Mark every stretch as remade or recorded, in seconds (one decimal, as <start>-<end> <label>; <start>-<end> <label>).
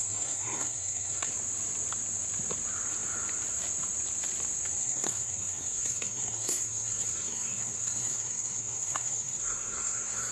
0.0-1.3 remade; 1.3-4.8 recorded; 4.8-10.3 remade